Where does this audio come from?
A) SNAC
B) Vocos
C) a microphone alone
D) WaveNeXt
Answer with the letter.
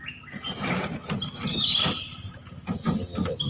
C